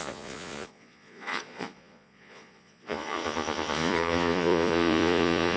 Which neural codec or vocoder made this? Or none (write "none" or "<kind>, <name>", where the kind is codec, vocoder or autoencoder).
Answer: vocoder, Vocos